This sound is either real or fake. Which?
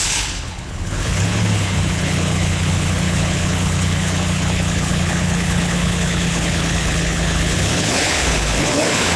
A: fake